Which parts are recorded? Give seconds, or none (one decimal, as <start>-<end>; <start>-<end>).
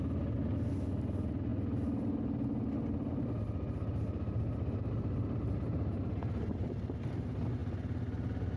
0.0-8.6